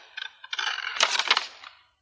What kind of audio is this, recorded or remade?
remade